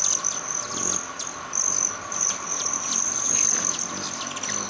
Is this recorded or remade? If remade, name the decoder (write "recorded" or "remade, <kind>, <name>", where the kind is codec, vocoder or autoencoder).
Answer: recorded